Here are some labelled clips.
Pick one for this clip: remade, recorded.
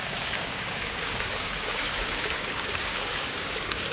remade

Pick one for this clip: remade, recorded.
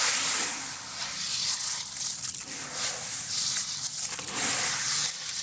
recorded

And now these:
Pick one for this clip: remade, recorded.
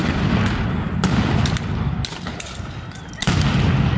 recorded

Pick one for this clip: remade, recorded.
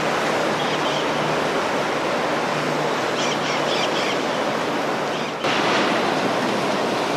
recorded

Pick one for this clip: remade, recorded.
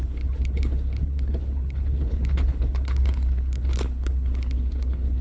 remade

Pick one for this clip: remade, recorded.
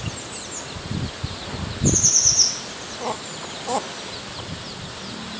recorded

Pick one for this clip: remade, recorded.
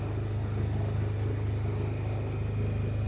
recorded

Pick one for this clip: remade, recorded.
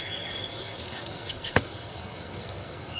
remade